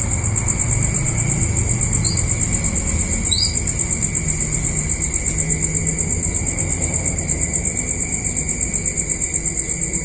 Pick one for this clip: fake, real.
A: real